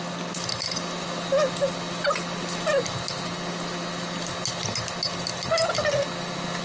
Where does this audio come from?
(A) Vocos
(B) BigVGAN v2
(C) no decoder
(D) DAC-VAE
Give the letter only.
C